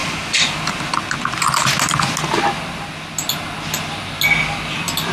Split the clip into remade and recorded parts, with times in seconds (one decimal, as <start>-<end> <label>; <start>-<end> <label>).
0.0-5.1 recorded